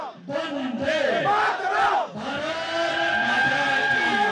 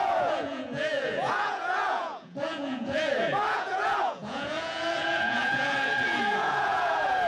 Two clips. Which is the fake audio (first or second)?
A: second